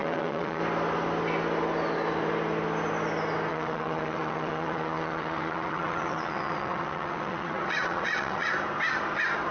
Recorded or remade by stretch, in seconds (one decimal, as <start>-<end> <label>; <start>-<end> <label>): 0.0-0.6 remade; 0.6-3.5 recorded; 3.5-8.5 remade; 8.5-9.5 recorded